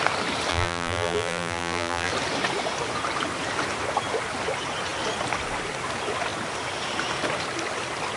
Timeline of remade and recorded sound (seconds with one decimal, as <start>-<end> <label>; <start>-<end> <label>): 0.0-0.5 recorded; 0.5-2.1 remade; 2.1-8.2 recorded